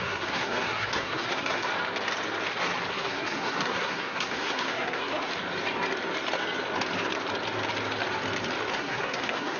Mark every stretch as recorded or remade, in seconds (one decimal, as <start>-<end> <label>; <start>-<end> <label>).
0.0-1.7 remade; 1.7-2.9 recorded; 2.9-5.3 remade; 5.3-8.7 recorded; 8.7-9.6 remade